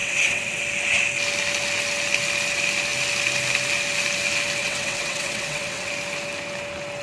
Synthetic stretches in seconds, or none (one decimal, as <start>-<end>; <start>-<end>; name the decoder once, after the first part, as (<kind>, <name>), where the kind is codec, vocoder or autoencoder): 0.0-0.6 (vocoder, WaveNeXt); 4.6-5.9